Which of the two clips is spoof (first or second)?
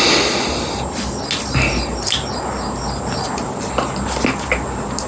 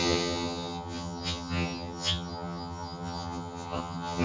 second